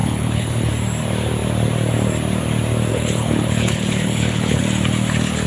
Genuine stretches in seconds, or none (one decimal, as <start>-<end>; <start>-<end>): 0.7-2.9; 4.6-5.5